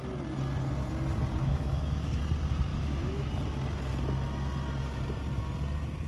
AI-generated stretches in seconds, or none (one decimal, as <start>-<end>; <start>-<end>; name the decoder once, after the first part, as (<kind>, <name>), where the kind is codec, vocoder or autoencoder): 1.4-2.2 (autoencoder, DAC-VAE); 2.7-3.3

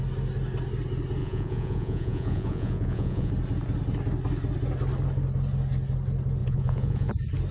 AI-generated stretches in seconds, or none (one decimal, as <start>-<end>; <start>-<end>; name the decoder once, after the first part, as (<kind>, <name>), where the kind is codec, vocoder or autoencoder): 1.2-3.3 (vocoder, Vocos); 6.4-7.1

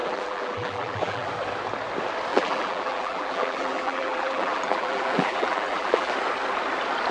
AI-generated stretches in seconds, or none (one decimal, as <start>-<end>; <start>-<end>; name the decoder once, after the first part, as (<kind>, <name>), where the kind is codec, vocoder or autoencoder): 0.0-1.3 (vocoder, BigVGAN v2); 2.3-6.1

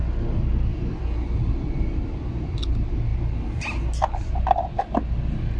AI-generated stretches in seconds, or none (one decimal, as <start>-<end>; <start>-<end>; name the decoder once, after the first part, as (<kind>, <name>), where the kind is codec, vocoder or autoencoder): 0.7-2.6 (vocoder, BigVGAN v2)

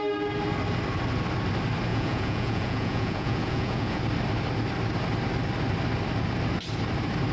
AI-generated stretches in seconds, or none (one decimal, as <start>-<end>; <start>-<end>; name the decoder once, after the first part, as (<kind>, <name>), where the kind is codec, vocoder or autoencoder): 1.9-4.0 (vocoder, Vocos)